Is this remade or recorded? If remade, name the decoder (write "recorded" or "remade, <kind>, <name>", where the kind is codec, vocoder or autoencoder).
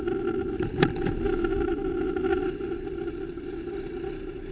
recorded